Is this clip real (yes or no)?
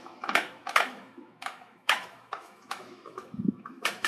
no